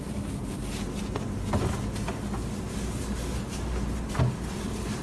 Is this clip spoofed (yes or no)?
no